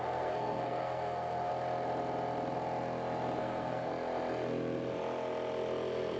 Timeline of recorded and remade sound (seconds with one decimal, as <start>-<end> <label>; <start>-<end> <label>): 0.0-1.5 remade; 1.5-3.4 recorded; 3.4-3.9 remade; 3.9-6.2 recorded